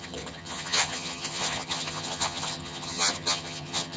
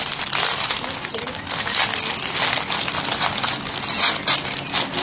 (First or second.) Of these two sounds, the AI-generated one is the first